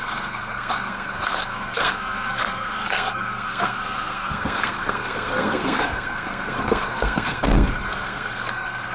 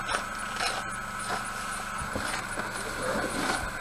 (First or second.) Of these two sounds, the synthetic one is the first